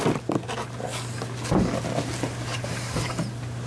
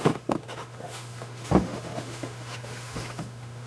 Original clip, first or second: first